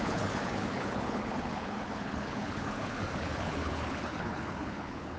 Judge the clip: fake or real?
fake